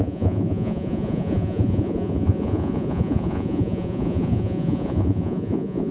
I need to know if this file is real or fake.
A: fake